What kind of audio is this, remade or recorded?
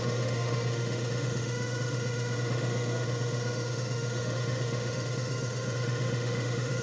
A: remade